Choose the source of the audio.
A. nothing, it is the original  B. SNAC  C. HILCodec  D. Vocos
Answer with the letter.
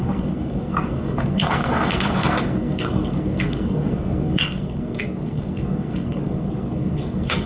B